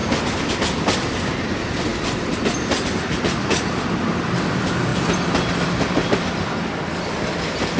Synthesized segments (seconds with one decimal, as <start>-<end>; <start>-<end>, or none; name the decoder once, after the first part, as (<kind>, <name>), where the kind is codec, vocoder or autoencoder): 0.5-4.9 (vocoder, BigVGAN v2); 5.7-7.8